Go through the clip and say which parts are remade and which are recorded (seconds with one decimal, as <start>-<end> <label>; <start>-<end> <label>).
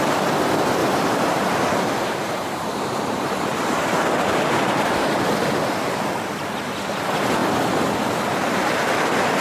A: 0.0-0.8 recorded; 0.8-4.5 remade; 4.5-9.4 recorded